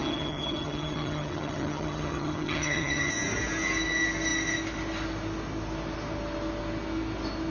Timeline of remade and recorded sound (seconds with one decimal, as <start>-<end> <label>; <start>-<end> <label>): 0.0-3.1 remade; 3.1-7.5 recorded